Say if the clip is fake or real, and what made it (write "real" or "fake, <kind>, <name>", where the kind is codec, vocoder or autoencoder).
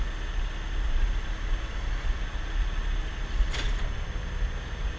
real